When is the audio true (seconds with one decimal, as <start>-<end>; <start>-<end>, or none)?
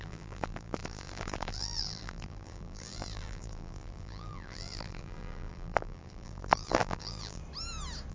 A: 7.4-8.1